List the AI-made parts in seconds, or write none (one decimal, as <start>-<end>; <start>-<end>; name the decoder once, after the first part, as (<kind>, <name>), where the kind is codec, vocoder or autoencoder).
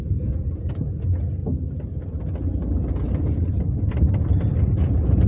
0.0-1.4 (vocoder, Vocos); 4.6-5.3